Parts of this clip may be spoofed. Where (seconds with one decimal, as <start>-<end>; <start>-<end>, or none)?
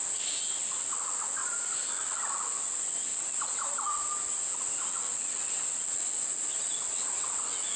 1.4-1.9